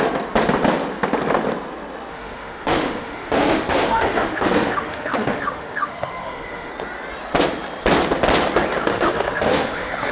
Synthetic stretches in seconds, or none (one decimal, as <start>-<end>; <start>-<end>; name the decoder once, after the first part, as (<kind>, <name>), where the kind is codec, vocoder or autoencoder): 2.1-6.7 (autoencoder, DAC-VAE); 8.9-10.1